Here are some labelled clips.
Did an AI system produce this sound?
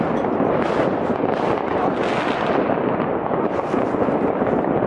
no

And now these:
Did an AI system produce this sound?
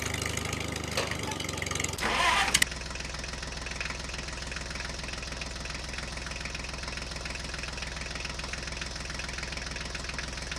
no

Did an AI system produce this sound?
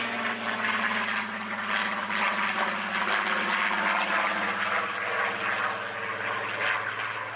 no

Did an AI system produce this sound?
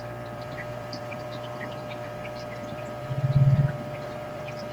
yes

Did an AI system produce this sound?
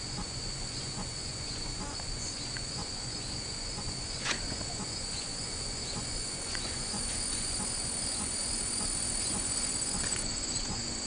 yes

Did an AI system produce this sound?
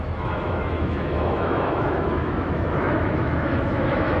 yes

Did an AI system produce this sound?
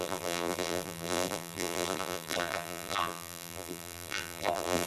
yes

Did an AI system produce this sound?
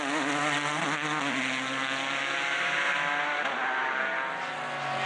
no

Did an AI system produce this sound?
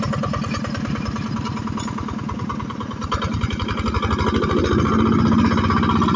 no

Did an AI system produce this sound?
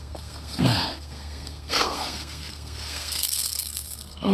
yes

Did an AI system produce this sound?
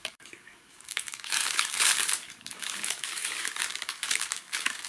yes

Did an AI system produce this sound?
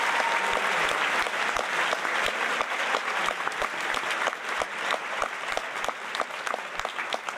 no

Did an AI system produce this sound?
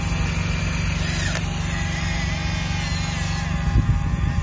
no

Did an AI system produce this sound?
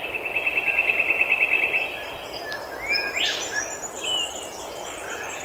no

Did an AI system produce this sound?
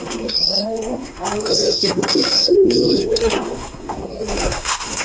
yes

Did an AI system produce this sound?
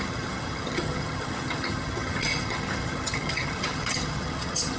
yes